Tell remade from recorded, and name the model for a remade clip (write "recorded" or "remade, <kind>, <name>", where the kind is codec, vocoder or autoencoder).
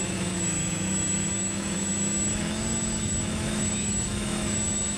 remade, autoencoder, DAC-VAE